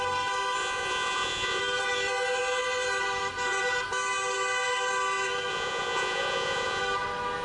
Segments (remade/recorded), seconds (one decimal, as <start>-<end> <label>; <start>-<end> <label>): 0.0-0.6 recorded; 0.6-1.6 remade; 1.6-5.5 recorded; 5.5-6.8 remade; 6.8-7.4 recorded